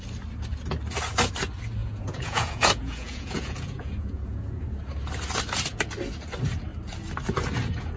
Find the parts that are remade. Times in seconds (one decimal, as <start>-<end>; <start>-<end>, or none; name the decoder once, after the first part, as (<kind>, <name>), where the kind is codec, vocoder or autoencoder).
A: 1.8-4.6 (vocoder, Vocos)